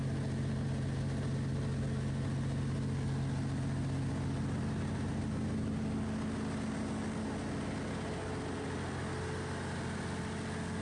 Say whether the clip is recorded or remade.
recorded